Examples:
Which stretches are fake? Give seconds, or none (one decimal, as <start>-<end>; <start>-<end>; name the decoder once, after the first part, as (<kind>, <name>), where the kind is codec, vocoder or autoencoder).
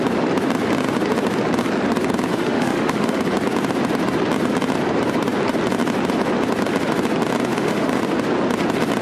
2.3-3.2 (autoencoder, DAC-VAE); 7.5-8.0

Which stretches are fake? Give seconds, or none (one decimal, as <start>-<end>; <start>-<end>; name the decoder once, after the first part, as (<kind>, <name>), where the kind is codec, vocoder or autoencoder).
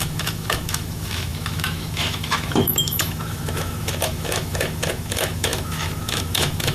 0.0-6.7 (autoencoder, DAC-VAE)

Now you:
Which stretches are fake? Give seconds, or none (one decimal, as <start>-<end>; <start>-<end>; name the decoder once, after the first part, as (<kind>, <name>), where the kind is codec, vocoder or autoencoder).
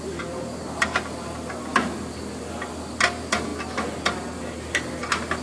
none